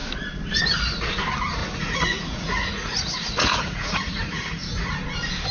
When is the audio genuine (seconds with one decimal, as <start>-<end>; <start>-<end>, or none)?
0.0-1.6; 4.9-5.5